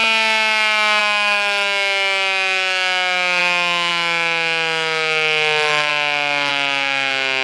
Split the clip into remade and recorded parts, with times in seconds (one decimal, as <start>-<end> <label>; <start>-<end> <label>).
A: 0.0-1.0 recorded; 1.0-5.9 remade; 5.9-6.5 recorded; 6.5-7.4 remade